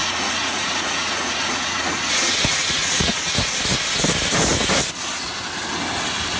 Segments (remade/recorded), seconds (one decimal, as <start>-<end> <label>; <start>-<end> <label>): 0.0-3.4 remade; 3.4-6.4 recorded